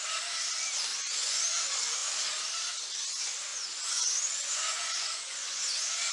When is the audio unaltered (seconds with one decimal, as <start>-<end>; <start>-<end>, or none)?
0.0-0.9; 1.4-3.5